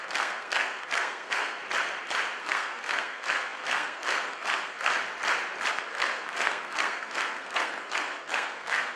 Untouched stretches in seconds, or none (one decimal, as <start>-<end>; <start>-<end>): 1.6-2.4; 4.9-5.7